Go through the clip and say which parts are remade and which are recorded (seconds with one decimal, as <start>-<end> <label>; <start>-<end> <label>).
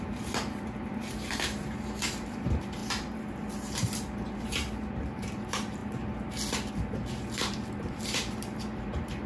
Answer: 0.0-5.8 remade; 5.8-6.7 recorded; 6.7-9.3 remade